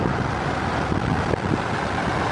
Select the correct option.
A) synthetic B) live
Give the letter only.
B